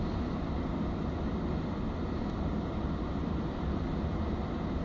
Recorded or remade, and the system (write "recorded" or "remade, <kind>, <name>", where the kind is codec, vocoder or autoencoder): recorded